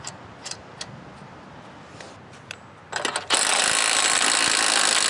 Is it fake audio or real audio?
real